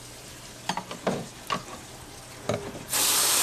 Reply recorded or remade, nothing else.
recorded